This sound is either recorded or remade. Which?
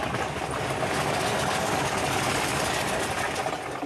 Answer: recorded